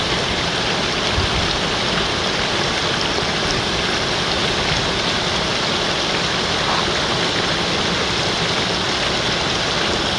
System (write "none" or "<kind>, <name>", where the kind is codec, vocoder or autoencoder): none